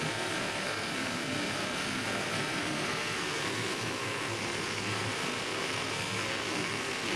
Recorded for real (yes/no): no